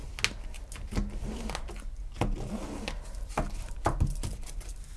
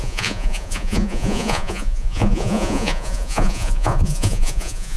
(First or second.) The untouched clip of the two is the first